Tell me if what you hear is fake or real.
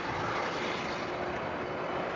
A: real